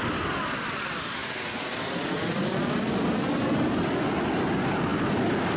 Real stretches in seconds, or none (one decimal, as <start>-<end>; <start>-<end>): 0.0-5.6